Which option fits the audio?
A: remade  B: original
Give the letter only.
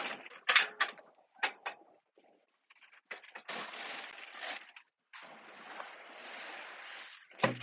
B